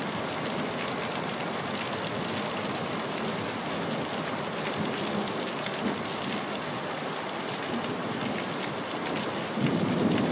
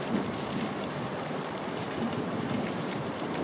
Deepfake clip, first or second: second